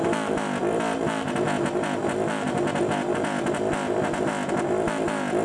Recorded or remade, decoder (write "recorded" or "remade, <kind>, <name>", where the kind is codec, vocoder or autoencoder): recorded